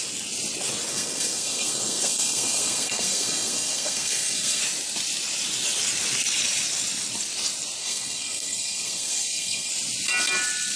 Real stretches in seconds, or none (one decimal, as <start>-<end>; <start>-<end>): 0.0-0.9; 4.6-7.8; 9.7-10.8